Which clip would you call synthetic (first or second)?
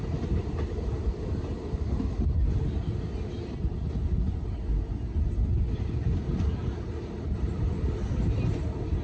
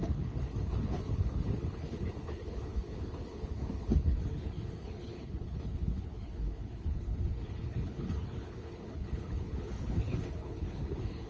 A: second